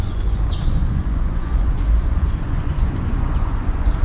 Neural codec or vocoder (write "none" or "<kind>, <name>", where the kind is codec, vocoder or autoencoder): vocoder, Vocos